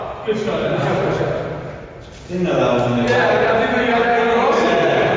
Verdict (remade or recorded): recorded